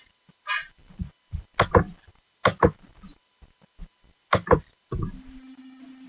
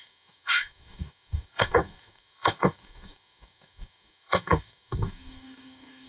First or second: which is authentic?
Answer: first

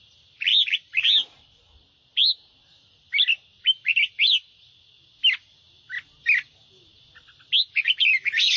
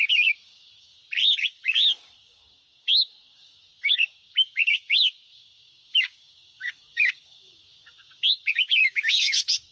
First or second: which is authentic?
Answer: first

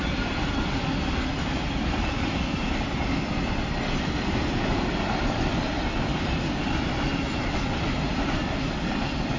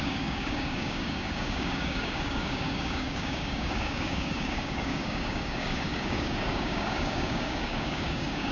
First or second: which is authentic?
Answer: first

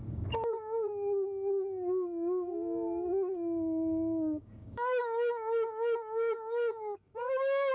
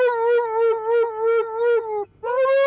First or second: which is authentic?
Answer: second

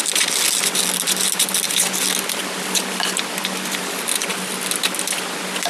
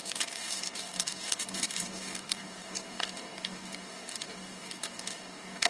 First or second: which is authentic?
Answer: first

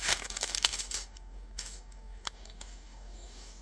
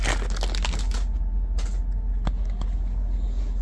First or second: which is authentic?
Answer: second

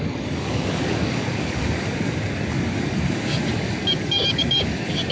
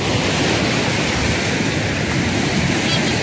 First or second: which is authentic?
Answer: second